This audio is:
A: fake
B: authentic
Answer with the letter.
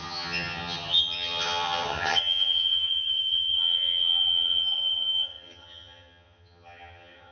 A